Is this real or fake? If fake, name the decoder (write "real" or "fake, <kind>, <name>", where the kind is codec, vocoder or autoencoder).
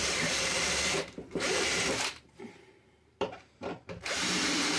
fake, vocoder, BigVGAN v2